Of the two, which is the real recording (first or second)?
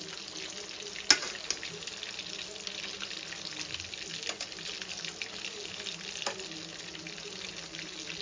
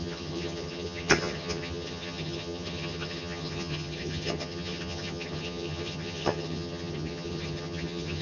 first